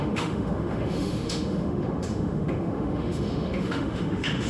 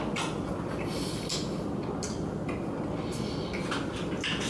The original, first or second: second